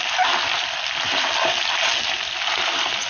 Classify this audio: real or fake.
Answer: real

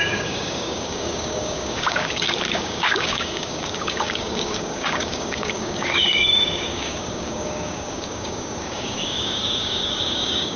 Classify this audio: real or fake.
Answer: fake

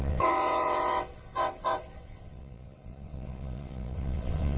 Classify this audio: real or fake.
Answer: fake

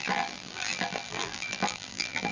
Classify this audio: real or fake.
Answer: fake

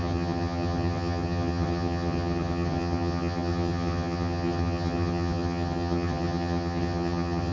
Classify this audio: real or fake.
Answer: fake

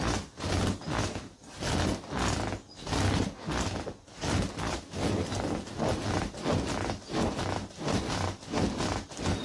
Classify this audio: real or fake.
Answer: real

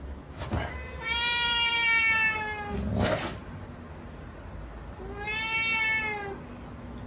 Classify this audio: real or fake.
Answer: real